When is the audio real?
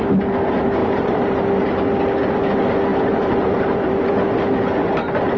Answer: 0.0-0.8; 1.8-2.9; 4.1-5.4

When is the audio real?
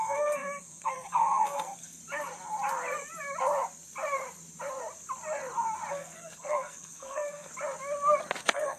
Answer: 2.0-5.9; 7.5-8.4